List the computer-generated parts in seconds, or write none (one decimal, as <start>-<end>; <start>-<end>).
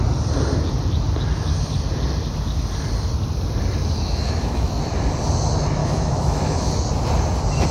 3.8-4.7; 5.8-6.7